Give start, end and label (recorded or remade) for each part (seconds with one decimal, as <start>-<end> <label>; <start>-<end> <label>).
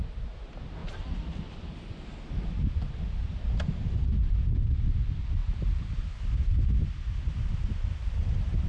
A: 0.0-8.7 recorded